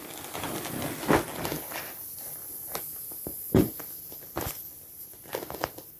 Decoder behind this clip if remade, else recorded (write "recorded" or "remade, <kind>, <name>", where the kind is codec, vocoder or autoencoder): recorded